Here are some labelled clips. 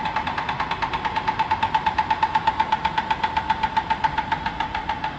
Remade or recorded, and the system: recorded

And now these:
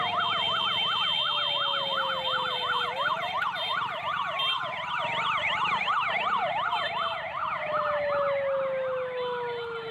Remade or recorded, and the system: recorded